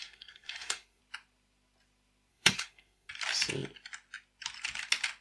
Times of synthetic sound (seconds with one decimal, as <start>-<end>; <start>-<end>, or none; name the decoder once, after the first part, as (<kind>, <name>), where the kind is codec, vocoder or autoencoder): 0.0-1.0 (codec, SNAC); 2.3-3.1